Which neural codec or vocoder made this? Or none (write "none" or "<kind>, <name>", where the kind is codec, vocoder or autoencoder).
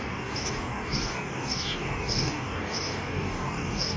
codec, DAC